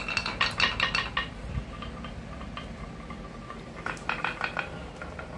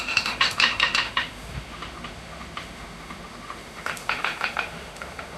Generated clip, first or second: second